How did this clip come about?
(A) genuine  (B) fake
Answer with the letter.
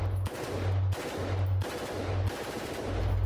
A